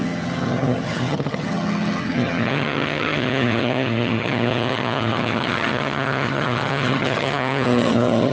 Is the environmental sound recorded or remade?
remade